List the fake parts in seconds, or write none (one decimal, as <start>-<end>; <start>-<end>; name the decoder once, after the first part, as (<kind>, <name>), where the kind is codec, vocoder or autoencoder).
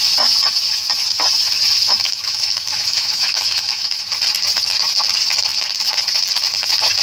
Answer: 1.8-4.0 (autoencoder, DAC-VAE)